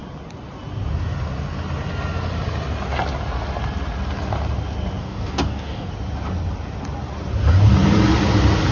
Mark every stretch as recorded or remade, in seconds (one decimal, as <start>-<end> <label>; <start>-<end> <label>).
0.0-5.0 recorded; 5.0-5.9 remade; 5.9-8.7 recorded